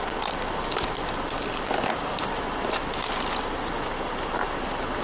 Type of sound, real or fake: real